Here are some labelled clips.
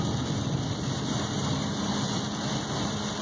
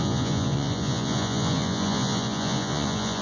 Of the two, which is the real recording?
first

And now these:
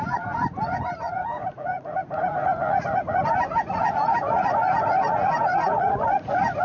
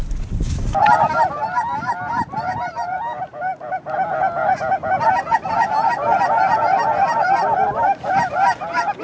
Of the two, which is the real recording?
second